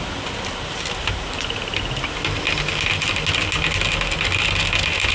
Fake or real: real